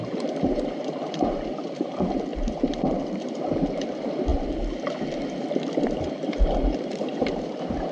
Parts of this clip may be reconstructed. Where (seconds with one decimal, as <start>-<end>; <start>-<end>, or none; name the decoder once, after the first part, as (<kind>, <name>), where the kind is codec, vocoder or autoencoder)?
0.0-7.9 (vocoder, BigVGAN v2)

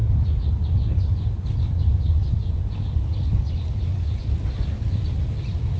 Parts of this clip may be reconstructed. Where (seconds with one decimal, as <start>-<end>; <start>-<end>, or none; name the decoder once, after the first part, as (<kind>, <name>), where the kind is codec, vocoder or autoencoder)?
none

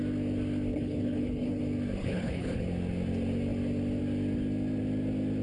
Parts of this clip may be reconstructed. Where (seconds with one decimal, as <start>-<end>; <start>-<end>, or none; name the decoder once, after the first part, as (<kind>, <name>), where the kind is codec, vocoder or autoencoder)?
0.7-1.6 (codec, HILCodec); 2.0-2.6

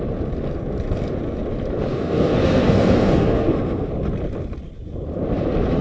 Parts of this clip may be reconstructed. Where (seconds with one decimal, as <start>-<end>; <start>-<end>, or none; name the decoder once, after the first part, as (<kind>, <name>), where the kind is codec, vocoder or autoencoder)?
1.9-3.9 (codec, SNAC)

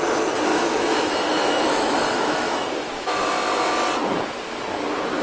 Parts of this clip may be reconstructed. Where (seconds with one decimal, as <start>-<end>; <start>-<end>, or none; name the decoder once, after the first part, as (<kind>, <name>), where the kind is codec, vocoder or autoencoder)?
0.5-3.3 (autoencoder, DAC-VAE)

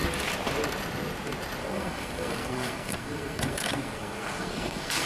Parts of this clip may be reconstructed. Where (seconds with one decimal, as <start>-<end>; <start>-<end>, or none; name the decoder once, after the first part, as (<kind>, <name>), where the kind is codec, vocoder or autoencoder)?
1.6-5.1 (codec, SNAC)

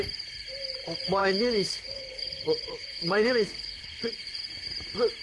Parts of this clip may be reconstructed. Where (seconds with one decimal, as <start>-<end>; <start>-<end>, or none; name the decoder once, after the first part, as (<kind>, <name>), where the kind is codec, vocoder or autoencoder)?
1.2-4.2 (codec, HILCodec)

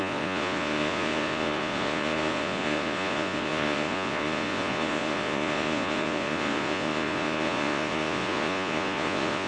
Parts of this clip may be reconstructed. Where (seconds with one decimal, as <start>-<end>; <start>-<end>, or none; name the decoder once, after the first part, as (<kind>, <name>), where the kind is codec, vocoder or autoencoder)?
0.0-9.5 (vocoder, Vocos)